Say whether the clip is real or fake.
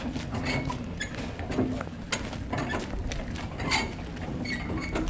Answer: real